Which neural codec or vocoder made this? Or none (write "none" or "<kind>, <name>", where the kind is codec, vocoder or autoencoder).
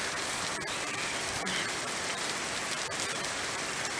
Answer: vocoder, BigVGAN v2